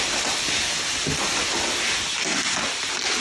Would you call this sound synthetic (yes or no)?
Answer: no